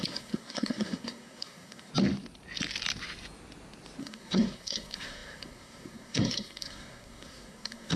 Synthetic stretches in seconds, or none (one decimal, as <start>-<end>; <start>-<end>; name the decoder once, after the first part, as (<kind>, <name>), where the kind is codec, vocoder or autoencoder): 0.0-1.9 (codec, SNAC); 4.0-8.0